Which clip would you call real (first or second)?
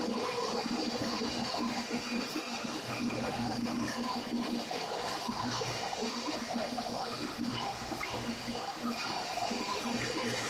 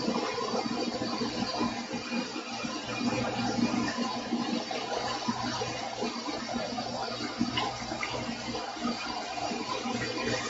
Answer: second